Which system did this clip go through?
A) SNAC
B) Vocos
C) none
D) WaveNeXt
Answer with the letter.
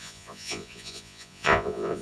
B